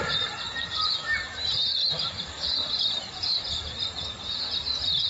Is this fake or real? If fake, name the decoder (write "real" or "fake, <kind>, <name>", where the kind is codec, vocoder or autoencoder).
fake, vocoder, BigVGAN v2